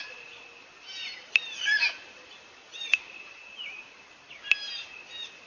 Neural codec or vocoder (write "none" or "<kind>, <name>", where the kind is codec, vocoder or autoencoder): none